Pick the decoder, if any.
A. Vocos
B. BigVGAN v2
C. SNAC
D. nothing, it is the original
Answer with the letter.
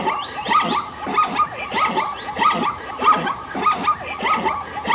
D